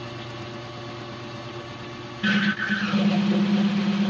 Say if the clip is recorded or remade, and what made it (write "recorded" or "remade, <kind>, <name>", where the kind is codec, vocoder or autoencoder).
recorded